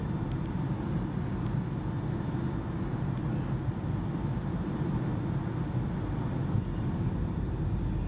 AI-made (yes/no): no